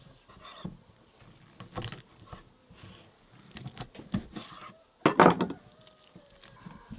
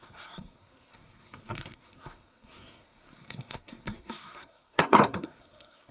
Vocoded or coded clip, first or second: second